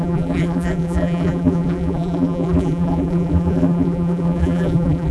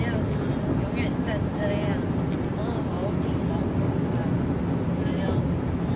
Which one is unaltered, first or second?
second